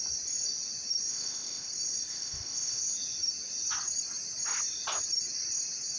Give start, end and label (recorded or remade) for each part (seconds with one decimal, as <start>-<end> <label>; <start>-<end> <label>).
0.0-1.1 recorded; 1.1-1.7 remade; 1.7-2.1 recorded; 2.1-2.8 remade; 2.8-6.0 recorded

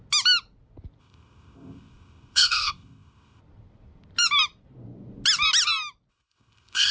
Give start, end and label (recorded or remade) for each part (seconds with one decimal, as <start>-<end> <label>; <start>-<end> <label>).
0.0-1.0 recorded; 1.0-3.4 remade; 3.4-6.1 recorded; 6.1-6.9 remade

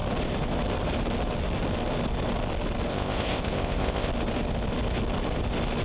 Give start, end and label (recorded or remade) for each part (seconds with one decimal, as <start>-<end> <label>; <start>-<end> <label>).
0.0-2.9 recorded; 2.9-4.1 remade; 4.1-5.8 recorded

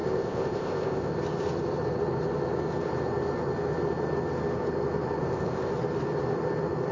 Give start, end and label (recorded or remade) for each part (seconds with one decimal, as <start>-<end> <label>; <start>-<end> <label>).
0.0-1.1 remade; 1.1-5.2 recorded; 5.2-5.7 remade; 5.7-6.9 recorded

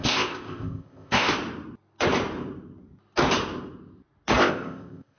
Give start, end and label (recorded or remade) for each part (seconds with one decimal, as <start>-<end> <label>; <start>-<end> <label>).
0.0-1.3 remade; 1.3-4.4 recorded; 4.4-5.2 remade

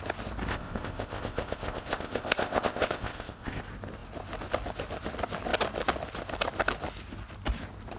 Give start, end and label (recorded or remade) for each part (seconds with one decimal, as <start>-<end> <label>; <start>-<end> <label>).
0.0-0.5 recorded; 0.5-3.6 remade; 3.6-8.0 recorded

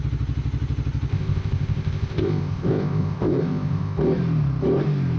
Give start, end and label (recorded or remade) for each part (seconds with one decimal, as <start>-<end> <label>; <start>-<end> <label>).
0.0-1.1 recorded; 1.1-4.0 remade; 4.0-5.2 recorded